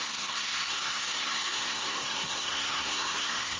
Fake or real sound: fake